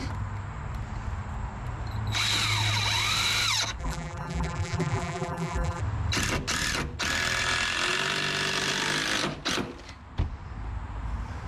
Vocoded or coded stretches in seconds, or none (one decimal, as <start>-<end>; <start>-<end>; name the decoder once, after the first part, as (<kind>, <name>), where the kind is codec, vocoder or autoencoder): 3.8-5.8 (vocoder, BigVGAN v2)